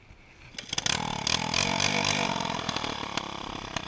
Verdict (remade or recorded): recorded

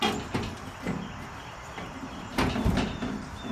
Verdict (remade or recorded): recorded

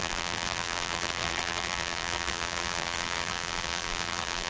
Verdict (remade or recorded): remade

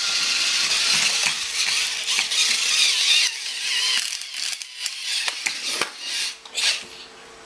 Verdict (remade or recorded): recorded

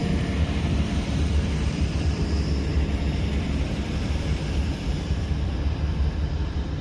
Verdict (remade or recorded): remade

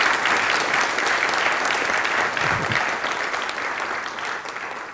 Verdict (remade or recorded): remade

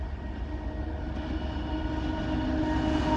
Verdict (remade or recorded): recorded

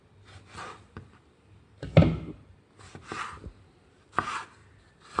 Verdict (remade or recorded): recorded